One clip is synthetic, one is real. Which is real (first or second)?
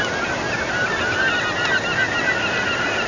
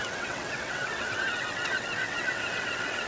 first